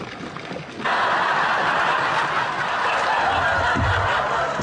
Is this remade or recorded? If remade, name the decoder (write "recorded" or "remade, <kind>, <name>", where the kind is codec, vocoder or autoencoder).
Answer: recorded